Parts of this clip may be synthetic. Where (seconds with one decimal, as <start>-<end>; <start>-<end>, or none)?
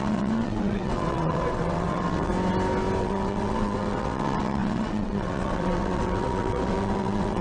0.0-2.3; 3.0-7.4